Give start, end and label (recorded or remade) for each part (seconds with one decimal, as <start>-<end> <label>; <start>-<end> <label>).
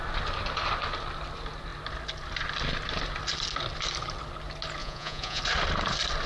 0.0-4.8 recorded; 4.8-5.4 remade; 5.4-6.3 recorded